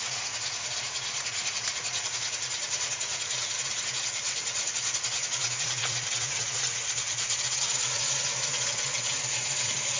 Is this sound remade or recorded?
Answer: remade